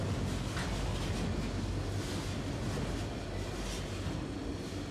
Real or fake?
real